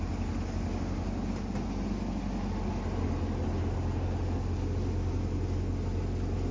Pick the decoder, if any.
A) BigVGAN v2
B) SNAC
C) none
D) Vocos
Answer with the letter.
C